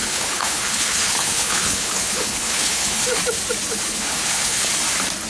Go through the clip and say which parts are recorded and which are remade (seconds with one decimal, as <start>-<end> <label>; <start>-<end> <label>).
0.0-3.0 remade; 3.0-3.7 recorded; 3.7-4.7 remade; 4.7-5.3 recorded